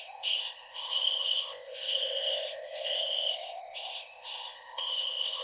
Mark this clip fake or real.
fake